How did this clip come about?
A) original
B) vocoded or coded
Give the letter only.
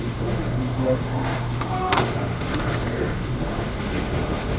B